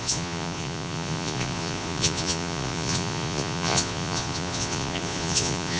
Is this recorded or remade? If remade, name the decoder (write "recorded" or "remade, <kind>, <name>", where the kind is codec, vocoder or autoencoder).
remade, vocoder, Vocos